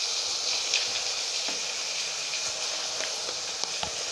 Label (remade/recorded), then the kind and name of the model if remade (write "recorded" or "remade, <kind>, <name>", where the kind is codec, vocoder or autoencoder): recorded